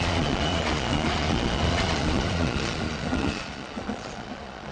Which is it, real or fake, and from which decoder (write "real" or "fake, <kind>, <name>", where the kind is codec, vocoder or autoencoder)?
fake, vocoder, Vocos